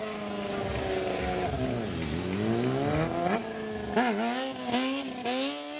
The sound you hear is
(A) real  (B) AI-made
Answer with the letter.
A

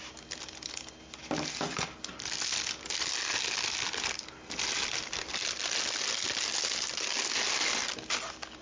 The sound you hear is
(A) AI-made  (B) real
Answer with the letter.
B